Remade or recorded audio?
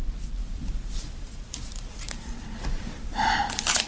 remade